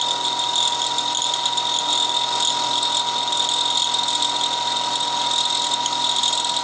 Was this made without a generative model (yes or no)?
yes